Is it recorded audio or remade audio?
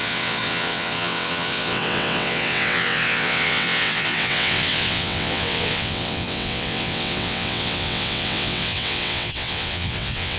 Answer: remade